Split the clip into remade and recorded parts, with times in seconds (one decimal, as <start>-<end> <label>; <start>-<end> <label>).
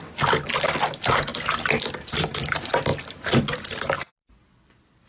0.0-5.1 recorded